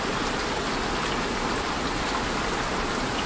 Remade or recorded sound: recorded